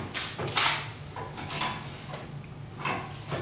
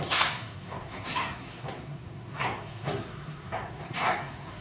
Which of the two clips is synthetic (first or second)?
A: second